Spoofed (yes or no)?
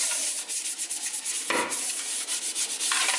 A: no